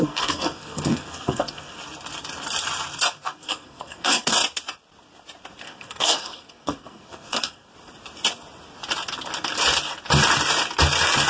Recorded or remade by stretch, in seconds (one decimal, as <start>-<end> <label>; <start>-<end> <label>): 0.0-1.8 remade; 1.8-3.1 recorded; 3.1-4.3 remade; 4.3-5.6 recorded; 5.6-7.7 remade; 7.7-11.3 recorded

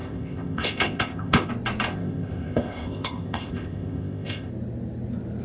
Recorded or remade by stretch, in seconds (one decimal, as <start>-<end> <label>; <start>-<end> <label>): 0.0-1.5 remade; 1.5-1.9 recorded; 1.9-4.5 remade; 4.5-5.4 recorded